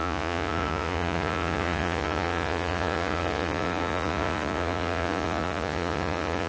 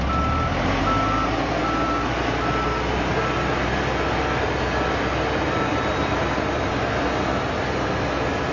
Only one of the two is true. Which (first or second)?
second